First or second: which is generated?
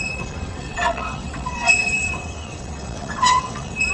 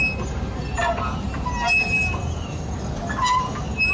first